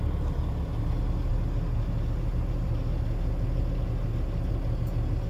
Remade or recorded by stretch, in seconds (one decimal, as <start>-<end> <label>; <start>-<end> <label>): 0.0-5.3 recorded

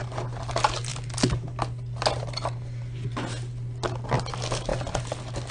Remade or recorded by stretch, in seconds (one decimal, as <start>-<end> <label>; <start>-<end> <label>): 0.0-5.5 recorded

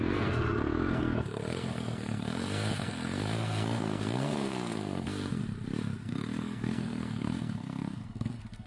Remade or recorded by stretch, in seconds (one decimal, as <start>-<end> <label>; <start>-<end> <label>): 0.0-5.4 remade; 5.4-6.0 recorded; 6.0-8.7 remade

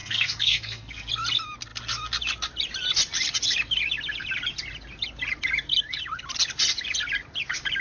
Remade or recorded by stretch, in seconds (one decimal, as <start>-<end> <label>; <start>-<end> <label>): 0.0-1.1 remade; 1.1-7.8 recorded

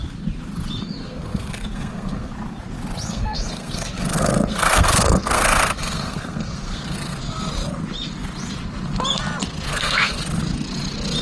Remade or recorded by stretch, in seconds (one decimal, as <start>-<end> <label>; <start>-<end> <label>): 0.0-1.0 recorded; 1.0-2.3 remade; 2.3-3.1 recorded; 3.1-7.2 remade; 7.2-9.7 recorded; 9.7-10.2 remade; 10.2-11.2 recorded

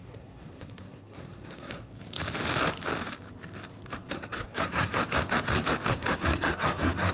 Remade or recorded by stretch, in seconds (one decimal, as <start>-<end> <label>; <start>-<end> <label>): 0.0-1.9 remade; 1.9-4.1 recorded; 4.1-5.0 remade; 5.0-5.9 recorded; 5.9-7.1 remade